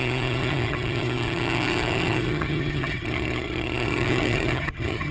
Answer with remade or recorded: remade